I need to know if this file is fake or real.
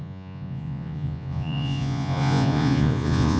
fake